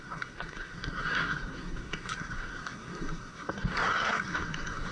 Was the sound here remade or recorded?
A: remade